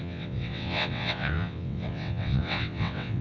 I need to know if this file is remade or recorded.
remade